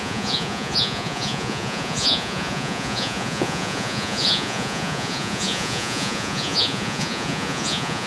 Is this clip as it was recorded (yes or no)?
no